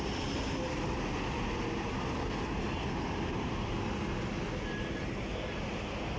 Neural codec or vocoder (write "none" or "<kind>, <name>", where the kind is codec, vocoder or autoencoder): none